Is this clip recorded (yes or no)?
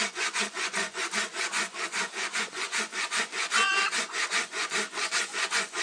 no